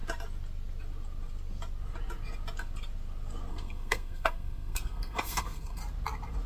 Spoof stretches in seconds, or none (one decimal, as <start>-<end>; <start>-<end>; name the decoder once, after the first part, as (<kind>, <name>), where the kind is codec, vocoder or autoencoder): 3.5-5.8 (codec, SNAC)